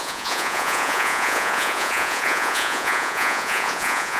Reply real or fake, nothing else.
fake